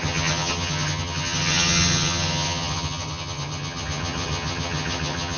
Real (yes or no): no